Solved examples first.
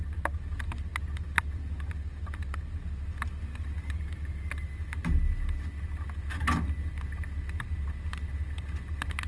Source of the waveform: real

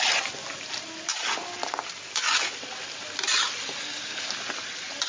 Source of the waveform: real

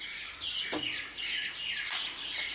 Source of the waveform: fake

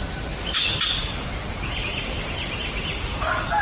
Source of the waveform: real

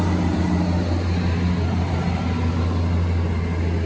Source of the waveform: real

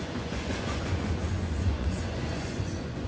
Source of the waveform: fake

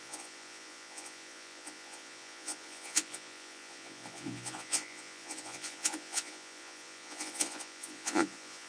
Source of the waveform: fake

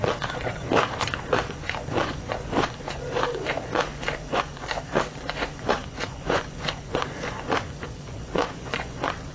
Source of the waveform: fake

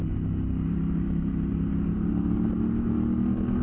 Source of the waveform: real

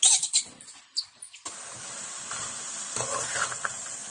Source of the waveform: real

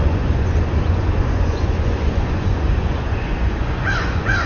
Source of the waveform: fake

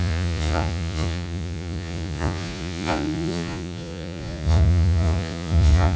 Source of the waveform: fake